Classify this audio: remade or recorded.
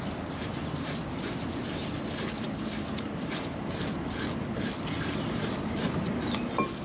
recorded